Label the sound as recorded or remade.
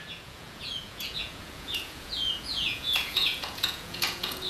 remade